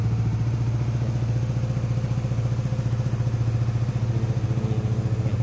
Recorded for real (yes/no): yes